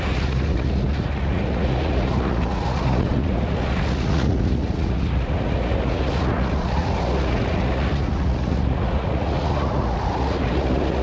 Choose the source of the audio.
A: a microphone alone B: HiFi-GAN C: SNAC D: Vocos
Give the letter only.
D